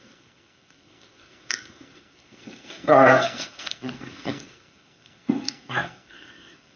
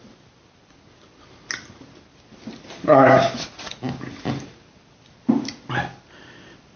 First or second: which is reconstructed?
first